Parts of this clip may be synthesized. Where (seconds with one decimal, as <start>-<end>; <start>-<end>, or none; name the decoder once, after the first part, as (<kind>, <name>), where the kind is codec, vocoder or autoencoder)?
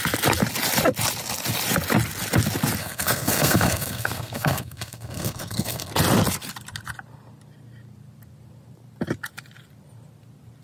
2.8-5.9 (codec, SNAC)